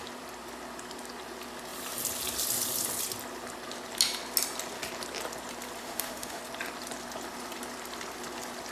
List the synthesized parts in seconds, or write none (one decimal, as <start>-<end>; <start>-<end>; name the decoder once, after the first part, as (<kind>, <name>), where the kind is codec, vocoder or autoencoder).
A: 5.8-6.4 (autoencoder, DAC-VAE)